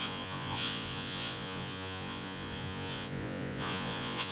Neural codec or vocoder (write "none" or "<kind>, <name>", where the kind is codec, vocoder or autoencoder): vocoder, Vocos